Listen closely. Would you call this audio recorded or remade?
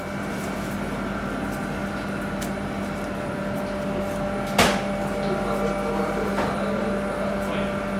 recorded